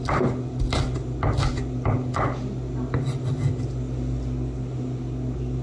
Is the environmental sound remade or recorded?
recorded